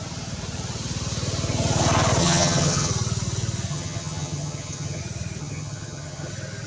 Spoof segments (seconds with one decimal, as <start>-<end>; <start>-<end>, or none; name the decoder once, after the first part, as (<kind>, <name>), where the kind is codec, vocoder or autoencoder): 2.2-2.9 (vocoder, HiFi-GAN); 3.7-5.0; 5.4-6.3